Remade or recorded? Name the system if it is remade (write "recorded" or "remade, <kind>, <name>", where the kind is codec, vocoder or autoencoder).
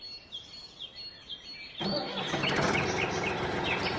recorded